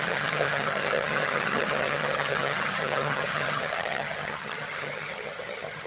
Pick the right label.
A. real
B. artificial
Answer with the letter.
B